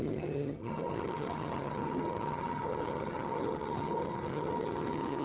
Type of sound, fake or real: fake